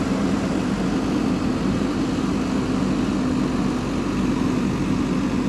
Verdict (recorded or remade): recorded